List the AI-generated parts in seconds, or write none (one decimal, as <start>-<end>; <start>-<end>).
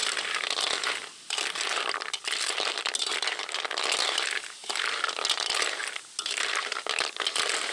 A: none